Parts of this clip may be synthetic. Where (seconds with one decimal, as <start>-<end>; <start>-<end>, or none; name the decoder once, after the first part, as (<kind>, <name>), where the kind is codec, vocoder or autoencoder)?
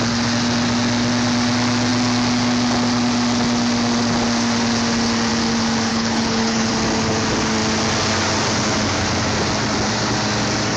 5.9-6.7 (codec, HILCodec)